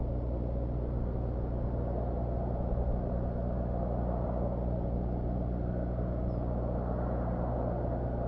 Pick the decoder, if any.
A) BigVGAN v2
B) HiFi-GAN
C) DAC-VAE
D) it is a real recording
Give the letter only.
D